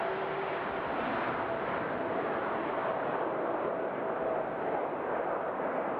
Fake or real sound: real